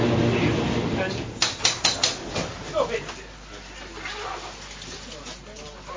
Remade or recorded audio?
recorded